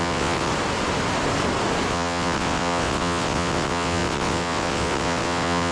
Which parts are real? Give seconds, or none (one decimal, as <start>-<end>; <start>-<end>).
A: 0.5-1.9